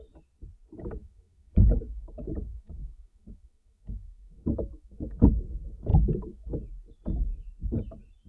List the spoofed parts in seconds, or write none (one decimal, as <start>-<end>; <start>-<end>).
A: 1.0-5.3; 5.9-6.5